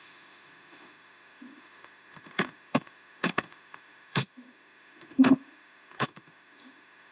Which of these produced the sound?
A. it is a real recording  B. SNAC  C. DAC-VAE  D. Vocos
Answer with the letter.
C